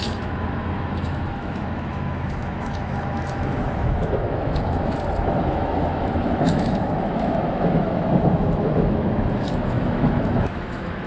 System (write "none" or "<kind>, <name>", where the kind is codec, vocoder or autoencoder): autoencoder, DAC-VAE